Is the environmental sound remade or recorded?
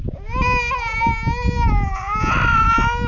recorded